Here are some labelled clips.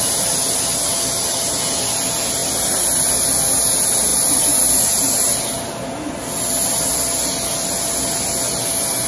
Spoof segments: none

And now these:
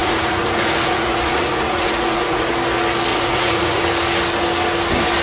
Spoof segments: 0.0-2.5 (vocoder, Vocos); 3.1-3.8

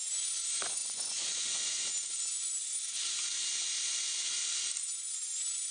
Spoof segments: 0.8-1.9 (vocoder, Vocos)

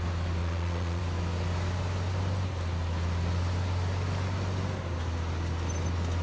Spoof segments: 0.4-1.0 (vocoder, Vocos)

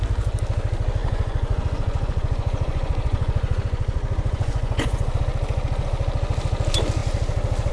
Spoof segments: 1.0-5.2 (vocoder, Vocos)

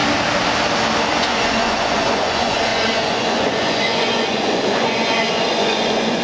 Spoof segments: 1.1-6.2 (vocoder, Vocos)